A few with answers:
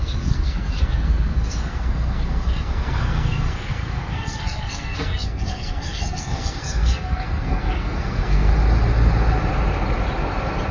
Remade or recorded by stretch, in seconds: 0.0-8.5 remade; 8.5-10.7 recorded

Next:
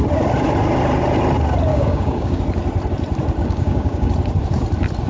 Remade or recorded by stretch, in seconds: 0.0-1.7 recorded; 1.7-2.4 remade; 2.4-3.4 recorded; 3.4-4.1 remade; 4.1-5.1 recorded